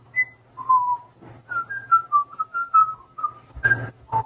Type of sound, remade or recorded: recorded